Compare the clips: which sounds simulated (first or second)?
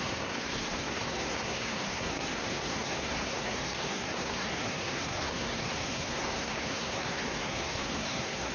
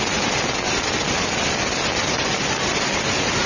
first